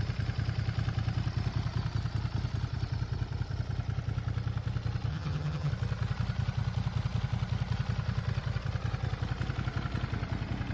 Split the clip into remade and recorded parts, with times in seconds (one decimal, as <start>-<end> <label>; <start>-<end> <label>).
0.0-5.1 recorded; 5.1-5.7 remade; 5.7-10.7 recorded